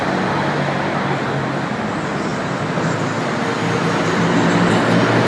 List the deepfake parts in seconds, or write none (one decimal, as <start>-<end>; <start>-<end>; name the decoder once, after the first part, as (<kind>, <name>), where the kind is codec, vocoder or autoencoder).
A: none